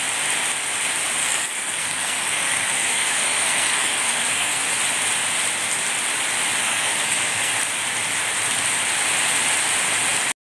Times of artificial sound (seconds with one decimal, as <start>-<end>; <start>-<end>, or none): 1.2-4.8; 6.6-7.5